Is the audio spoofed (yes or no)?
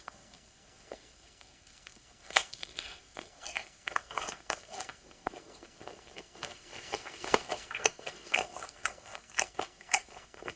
yes